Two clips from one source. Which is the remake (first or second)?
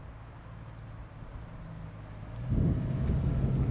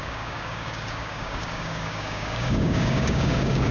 second